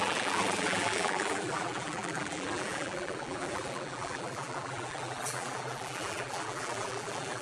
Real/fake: fake